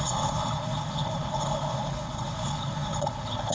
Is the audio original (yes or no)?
no